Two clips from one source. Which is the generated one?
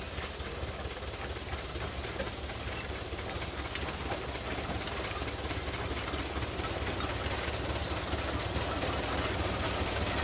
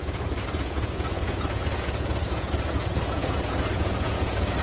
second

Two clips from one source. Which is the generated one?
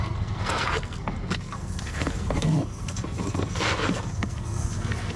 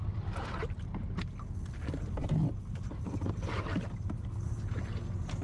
first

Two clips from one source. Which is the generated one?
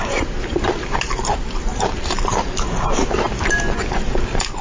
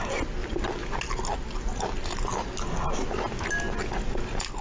first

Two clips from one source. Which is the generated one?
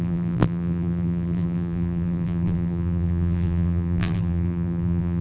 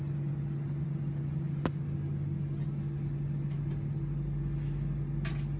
first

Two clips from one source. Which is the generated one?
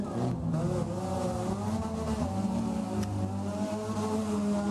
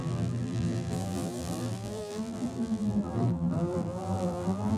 second